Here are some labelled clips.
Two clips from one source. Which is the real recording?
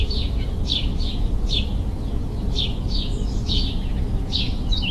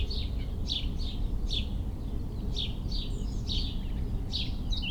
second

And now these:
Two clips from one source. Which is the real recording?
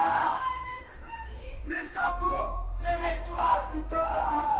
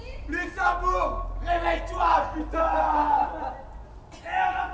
second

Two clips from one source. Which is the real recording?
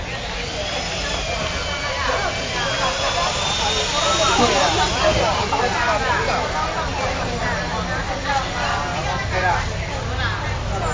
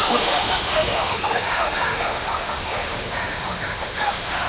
first